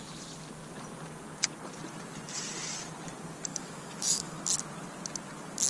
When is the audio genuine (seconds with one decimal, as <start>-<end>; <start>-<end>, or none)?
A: 0.0-3.5; 4.4-5.7